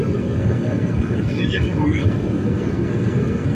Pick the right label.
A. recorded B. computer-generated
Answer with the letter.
B